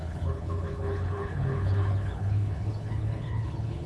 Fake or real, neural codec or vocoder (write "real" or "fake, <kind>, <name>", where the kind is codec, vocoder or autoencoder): fake, codec, HILCodec